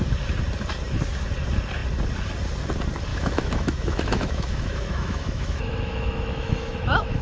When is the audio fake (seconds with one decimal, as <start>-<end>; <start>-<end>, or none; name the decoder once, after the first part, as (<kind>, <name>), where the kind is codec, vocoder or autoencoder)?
3.1-7.2 (autoencoder, DAC-VAE)

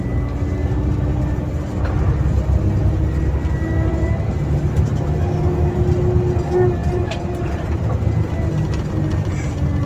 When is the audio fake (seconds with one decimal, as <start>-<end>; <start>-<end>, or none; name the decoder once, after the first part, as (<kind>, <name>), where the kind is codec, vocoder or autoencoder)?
6.8-7.8 (vocoder, BigVGAN v2)

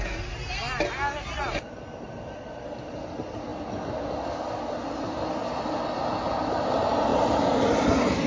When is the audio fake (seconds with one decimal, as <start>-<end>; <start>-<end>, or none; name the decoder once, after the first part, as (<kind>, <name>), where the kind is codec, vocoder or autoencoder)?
none

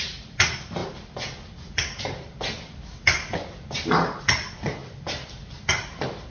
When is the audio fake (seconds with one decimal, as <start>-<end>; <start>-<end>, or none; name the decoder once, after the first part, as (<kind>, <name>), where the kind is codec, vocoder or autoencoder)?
none

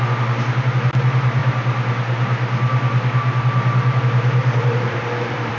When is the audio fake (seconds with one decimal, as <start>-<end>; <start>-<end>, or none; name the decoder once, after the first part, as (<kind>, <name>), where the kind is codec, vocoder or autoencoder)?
4.4-5.6 (vocoder, BigVGAN v2)

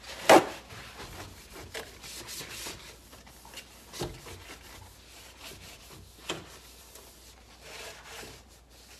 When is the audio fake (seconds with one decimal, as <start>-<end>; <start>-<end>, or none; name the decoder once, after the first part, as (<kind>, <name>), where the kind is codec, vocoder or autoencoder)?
none